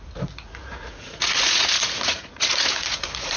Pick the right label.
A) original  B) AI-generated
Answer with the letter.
B